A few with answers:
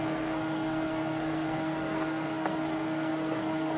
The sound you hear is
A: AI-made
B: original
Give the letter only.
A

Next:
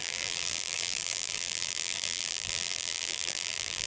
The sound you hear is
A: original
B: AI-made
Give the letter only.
B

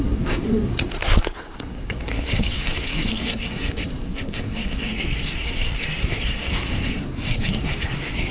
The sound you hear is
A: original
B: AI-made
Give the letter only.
B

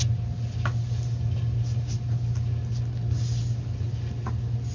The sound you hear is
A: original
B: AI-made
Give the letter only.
A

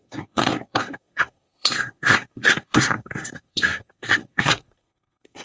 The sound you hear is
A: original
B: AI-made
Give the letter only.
B